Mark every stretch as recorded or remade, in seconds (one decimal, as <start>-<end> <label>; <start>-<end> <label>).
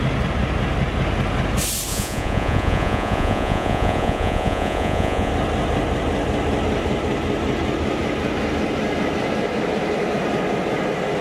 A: 0.0-1.9 recorded; 1.9-5.3 remade; 5.3-11.2 recorded